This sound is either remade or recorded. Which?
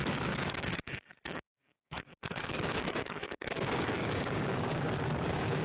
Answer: remade